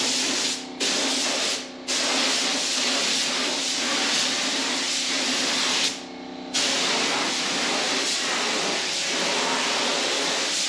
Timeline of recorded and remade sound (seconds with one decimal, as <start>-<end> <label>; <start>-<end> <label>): 0.0-10.7 recorded